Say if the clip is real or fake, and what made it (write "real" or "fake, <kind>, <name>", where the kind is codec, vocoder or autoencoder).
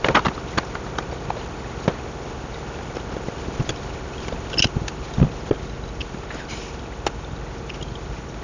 real